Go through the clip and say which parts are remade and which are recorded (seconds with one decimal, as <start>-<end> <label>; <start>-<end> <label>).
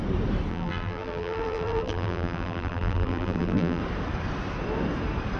0.0-0.5 recorded; 0.5-3.8 remade; 3.8-5.4 recorded